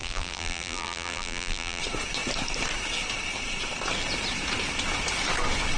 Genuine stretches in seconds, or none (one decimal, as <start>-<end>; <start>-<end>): 1.8-5.8